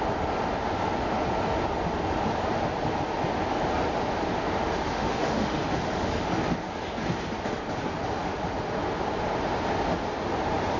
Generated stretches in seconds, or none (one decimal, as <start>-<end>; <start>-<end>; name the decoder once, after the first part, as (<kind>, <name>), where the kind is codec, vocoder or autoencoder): 4.9-5.6 (autoencoder, DAC-VAE)